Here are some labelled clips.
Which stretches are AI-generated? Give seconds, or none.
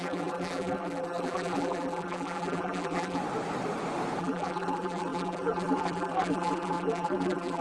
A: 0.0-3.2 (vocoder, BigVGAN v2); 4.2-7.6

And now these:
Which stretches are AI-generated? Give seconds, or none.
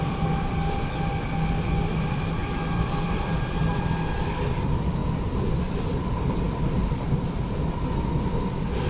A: 2.4-3.5 (vocoder, BigVGAN v2)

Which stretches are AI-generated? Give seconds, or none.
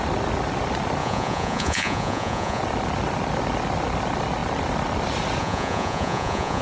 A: 1.0-2.6 (vocoder, Vocos); 5.4-6.6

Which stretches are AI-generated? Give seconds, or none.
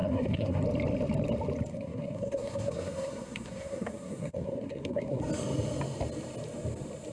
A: 0.0-0.6 (codec, SNAC); 1.7-5.2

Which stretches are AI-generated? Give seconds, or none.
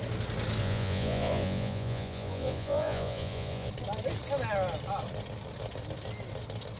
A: 0.6-3.7 (vocoder, Vocos)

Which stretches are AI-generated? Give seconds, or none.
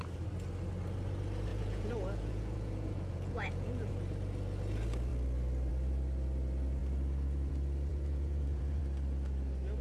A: 1.5-3.9 (vocoder, Vocos); 7.9-8.8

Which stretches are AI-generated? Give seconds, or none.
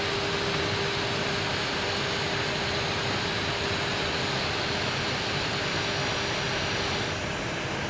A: 3.9-5.6 (vocoder, BigVGAN v2)